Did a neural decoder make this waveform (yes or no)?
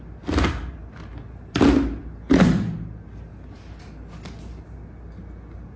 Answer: no